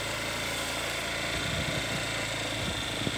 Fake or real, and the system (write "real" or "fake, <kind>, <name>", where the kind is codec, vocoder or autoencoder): real